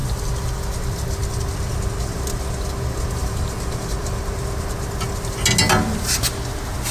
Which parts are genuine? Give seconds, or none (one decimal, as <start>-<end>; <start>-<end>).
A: 0.0-3.2; 4.2-6.9